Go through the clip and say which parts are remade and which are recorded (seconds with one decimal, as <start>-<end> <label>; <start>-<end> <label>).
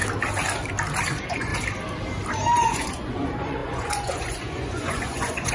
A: 0.0-1.1 recorded; 1.1-1.5 remade; 1.5-2.6 recorded; 2.6-5.5 remade